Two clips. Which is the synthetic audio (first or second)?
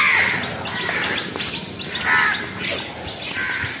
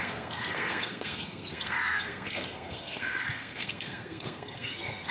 second